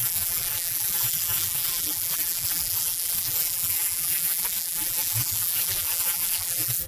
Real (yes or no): no